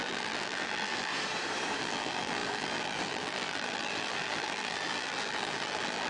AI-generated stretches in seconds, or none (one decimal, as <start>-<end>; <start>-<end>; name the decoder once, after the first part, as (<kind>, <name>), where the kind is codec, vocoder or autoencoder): 0.0-1.1 (vocoder, BigVGAN v2); 1.8-6.1

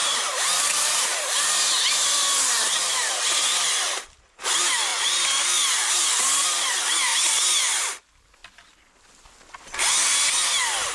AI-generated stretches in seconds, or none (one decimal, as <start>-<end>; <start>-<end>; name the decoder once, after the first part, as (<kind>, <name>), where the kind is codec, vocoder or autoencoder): 0.0-4.9 (vocoder, BigVGAN v2); 5.9-7.1; 7.8-8.4

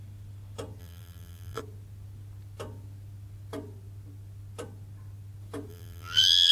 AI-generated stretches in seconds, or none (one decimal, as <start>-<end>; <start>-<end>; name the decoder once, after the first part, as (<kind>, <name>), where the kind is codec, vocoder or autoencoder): 0.8-1.6 (vocoder, BigVGAN v2); 5.7-6.5